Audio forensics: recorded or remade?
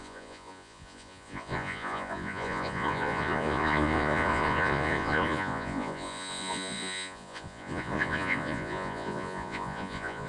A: remade